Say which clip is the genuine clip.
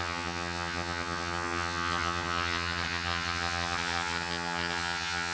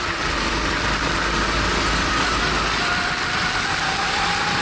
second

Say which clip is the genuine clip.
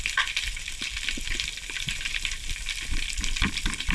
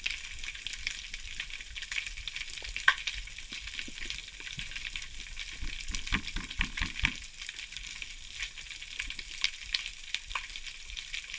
second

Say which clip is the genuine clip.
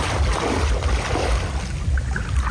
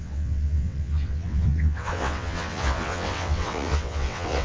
first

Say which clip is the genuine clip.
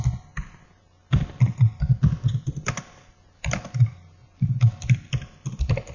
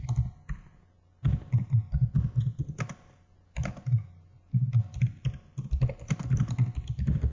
second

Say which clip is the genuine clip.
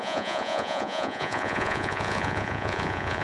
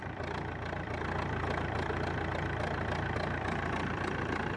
second